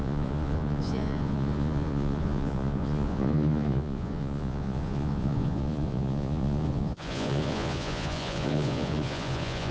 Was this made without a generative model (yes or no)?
no